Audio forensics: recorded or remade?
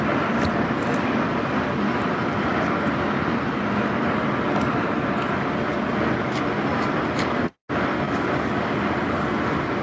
recorded